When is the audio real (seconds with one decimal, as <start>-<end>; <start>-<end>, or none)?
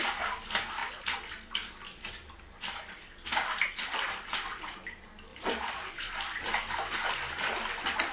0.0-5.3; 6.1-8.1